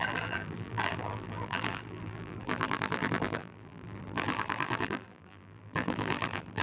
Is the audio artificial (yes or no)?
yes